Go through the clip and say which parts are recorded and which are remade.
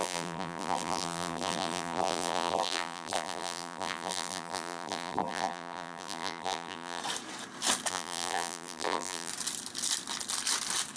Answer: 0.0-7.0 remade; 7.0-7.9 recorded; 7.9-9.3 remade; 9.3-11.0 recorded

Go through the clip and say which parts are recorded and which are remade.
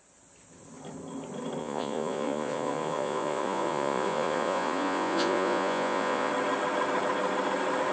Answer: 0.0-1.6 recorded; 1.6-6.3 remade; 6.3-7.9 recorded